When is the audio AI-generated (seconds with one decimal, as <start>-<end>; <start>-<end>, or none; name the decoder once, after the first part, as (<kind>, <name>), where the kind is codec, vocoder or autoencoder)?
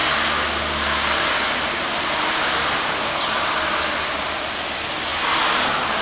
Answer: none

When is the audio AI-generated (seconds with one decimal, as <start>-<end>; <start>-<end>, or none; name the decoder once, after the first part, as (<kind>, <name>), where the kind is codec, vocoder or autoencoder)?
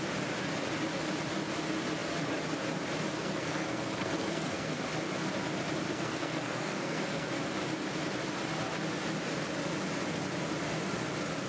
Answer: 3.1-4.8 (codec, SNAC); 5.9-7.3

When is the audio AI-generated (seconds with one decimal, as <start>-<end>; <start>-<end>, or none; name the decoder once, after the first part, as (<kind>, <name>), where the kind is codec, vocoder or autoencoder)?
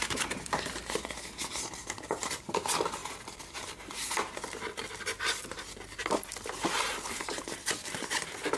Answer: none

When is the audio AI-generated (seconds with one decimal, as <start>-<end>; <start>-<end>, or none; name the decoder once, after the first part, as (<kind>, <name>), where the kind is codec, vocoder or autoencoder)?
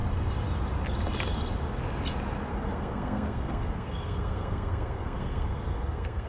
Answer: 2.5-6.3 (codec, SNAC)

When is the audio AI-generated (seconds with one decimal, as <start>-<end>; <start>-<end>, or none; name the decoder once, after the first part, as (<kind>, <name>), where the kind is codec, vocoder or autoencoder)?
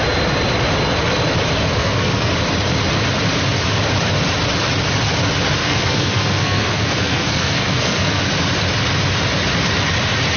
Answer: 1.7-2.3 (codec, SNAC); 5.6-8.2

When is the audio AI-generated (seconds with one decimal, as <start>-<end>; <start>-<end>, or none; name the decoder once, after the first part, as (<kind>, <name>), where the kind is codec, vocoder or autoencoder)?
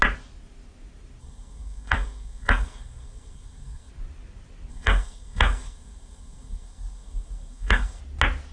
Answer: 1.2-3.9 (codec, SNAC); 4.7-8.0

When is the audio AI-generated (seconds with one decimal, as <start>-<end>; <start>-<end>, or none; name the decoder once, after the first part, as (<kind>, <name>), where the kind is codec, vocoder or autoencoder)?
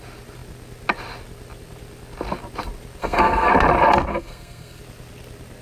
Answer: 3.0-3.5 (codec, SNAC); 4.1-4.8